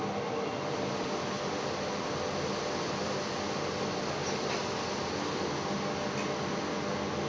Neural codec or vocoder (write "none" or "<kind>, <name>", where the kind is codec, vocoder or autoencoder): none